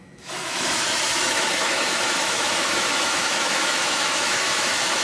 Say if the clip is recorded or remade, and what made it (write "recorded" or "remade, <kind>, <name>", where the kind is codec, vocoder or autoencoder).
remade, autoencoder, DAC-VAE